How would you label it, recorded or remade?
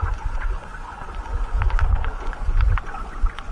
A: remade